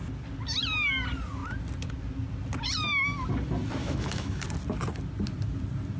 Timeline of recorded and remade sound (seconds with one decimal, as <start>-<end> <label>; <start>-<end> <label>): 0.0-3.8 recorded; 3.8-4.4 remade; 4.4-6.0 recorded